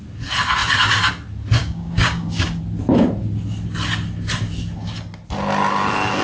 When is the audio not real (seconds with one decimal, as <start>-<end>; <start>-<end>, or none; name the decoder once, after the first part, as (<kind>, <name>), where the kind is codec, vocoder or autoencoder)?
1.6-2.6 (codec, DAC)